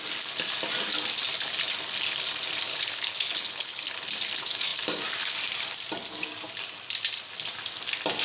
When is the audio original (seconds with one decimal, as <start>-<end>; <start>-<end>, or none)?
0.0-2.7; 3.9-8.2